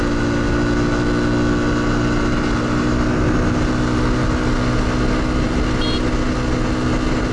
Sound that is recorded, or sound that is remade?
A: recorded